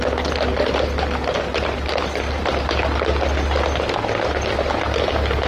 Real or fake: real